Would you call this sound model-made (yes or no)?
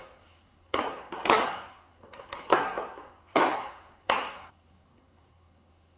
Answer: yes